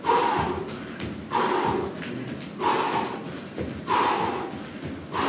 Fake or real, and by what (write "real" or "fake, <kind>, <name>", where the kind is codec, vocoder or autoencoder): real